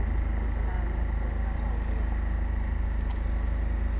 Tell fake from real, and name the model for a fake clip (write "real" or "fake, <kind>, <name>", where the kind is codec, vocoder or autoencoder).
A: real